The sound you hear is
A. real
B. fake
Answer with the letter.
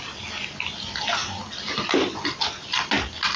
A